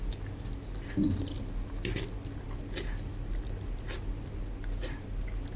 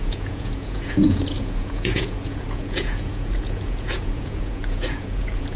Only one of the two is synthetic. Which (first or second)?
second